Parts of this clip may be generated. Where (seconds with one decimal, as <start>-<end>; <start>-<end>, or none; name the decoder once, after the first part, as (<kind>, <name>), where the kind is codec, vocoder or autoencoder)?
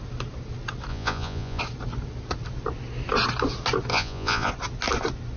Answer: 0.9-1.6 (vocoder, Vocos); 3.9-4.5